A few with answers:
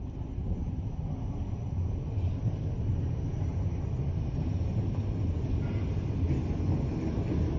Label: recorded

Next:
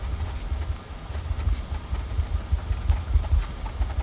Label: recorded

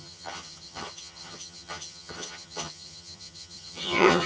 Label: remade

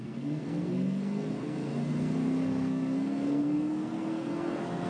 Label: remade